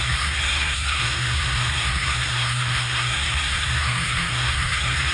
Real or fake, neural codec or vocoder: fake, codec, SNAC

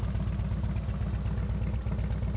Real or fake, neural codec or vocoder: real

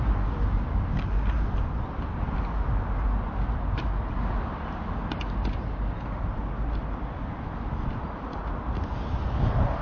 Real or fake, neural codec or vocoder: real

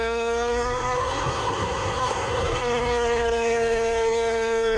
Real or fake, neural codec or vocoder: fake, codec, SNAC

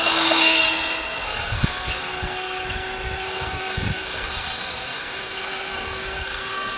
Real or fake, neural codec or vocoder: fake, codec, SNAC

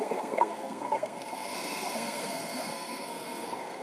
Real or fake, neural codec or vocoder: fake, codec, SNAC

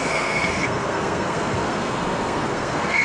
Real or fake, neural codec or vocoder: fake, codec, SNAC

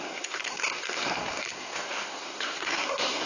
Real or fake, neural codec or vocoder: fake, codec, SNAC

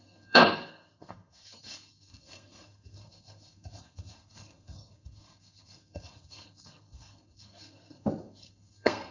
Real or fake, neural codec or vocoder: fake, codec, SNAC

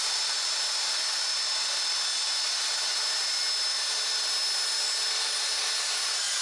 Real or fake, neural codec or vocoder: real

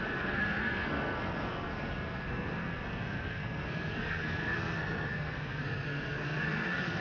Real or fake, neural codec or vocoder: fake, codec, SNAC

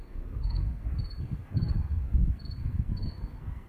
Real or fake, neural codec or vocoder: fake, codec, SNAC